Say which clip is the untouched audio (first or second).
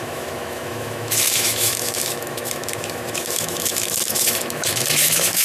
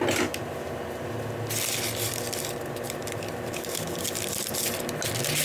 second